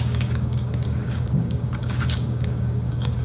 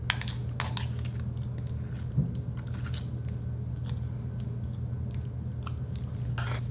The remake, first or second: first